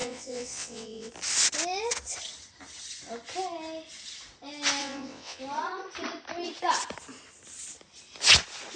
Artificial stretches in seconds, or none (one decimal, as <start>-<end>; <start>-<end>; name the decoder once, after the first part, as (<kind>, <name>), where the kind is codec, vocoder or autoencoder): 0.0-1.1 (vocoder, WaveNeXt); 4.8-5.4